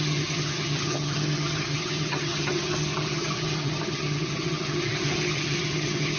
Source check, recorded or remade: remade